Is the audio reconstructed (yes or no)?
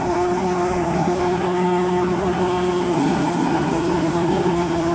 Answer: yes